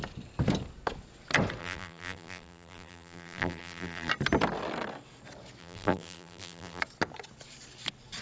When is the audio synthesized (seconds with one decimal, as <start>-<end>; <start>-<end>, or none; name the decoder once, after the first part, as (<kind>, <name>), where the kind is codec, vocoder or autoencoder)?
1.6-4.1 (vocoder, BigVGAN v2); 5.6-6.8